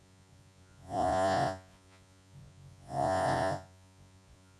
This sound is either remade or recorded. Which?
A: remade